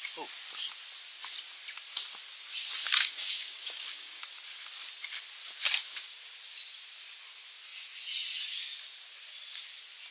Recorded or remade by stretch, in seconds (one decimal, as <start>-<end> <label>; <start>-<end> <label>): 0.0-2.8 recorded; 2.8-4.2 remade; 4.2-10.1 recorded